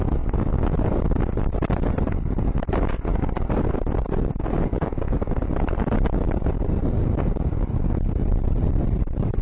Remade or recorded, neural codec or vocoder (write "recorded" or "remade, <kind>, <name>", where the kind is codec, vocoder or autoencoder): recorded